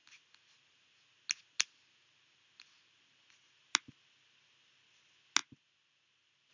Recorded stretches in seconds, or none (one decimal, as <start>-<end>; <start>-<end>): 0.0-6.5